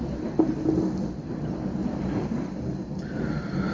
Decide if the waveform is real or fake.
real